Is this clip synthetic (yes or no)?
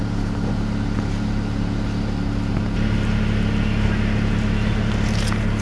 no